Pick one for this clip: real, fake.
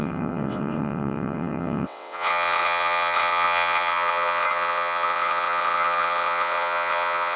fake